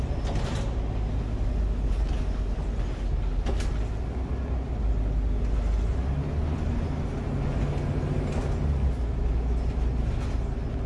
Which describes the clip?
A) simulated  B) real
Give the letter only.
B